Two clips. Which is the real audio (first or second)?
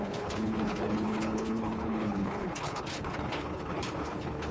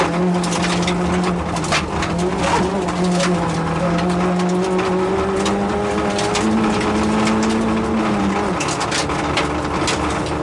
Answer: second